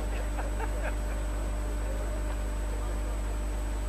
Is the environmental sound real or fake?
real